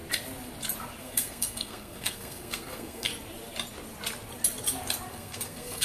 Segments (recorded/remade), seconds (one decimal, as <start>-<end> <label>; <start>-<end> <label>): 0.0-1.0 recorded; 1.0-3.1 remade; 3.1-5.1 recorded; 5.1-5.8 remade